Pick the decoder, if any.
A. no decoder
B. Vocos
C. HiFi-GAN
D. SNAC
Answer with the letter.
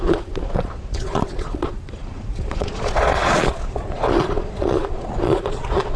B